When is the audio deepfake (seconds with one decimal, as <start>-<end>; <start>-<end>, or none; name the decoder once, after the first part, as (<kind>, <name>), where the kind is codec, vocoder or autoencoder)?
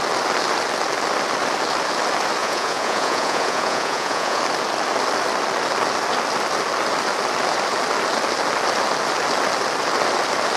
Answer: 2.4-4.4 (vocoder, Vocos)